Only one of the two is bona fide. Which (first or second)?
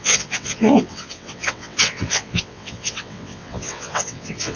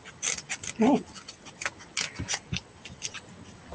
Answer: second